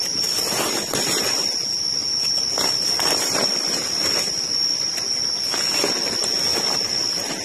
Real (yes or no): yes